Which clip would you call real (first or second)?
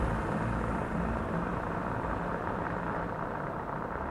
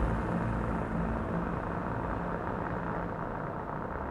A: second